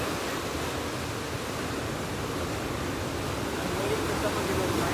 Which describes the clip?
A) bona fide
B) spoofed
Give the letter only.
A